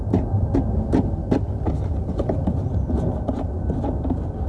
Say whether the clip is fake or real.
real